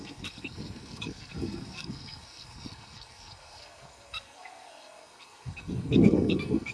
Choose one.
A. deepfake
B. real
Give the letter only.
A